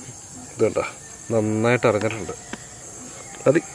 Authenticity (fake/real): real